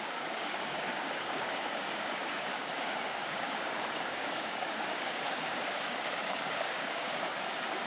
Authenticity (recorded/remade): remade